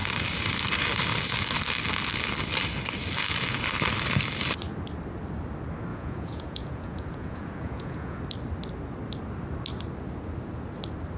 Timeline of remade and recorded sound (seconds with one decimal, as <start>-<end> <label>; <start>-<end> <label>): 0.0-5.9 recorded; 5.9-8.2 remade; 8.2-11.2 recorded